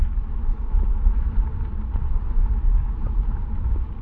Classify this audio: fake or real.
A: fake